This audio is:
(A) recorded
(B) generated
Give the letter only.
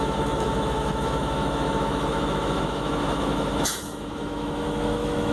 B